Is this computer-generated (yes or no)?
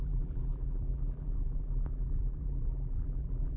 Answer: yes